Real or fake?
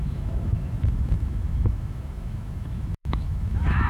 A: fake